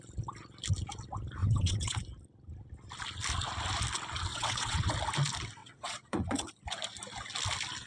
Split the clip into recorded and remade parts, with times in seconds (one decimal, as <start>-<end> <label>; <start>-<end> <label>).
0.0-1.4 recorded; 1.4-2.0 remade; 2.0-4.3 recorded; 4.3-4.9 remade; 4.9-5.6 recorded; 5.6-6.5 remade; 6.5-7.9 recorded